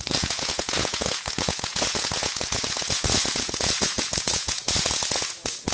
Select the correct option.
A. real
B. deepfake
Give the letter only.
B